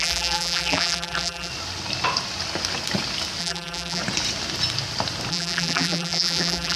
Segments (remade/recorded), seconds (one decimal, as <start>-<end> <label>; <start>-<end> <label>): 0.0-1.5 remade; 1.5-3.4 recorded; 3.4-4.0 remade; 4.0-5.3 recorded; 5.3-6.8 remade